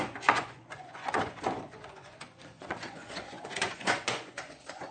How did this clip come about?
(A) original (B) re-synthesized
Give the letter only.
B